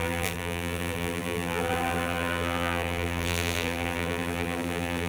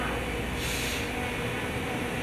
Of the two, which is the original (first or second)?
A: second